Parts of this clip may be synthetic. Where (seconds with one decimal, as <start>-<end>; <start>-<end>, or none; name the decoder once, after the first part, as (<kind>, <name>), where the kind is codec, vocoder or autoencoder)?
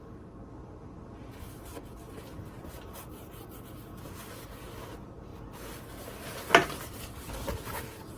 none